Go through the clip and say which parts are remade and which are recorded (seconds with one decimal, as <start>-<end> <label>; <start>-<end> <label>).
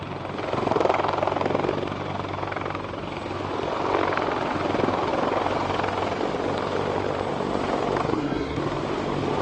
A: 0.0-8.0 recorded; 8.0-8.6 remade; 8.6-9.4 recorded